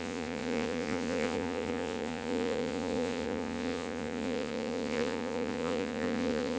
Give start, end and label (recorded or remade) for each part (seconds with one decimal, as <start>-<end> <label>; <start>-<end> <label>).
0.0-6.6 remade